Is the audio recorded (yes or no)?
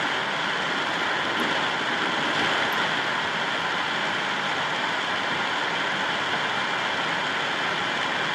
yes